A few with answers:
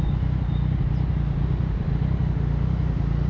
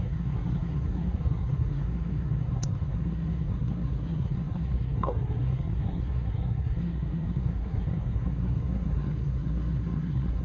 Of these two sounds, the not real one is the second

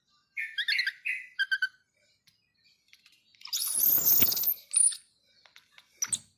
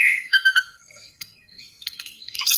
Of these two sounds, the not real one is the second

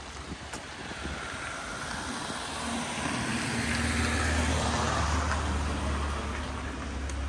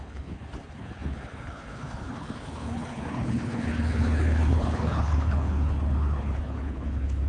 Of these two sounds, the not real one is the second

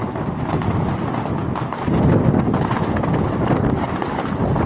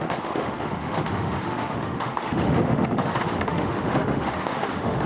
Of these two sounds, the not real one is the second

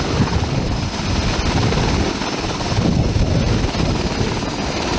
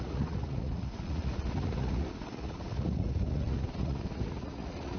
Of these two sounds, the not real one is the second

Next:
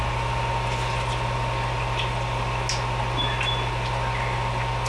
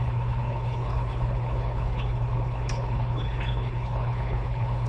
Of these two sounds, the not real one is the second